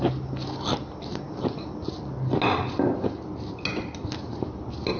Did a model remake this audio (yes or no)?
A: no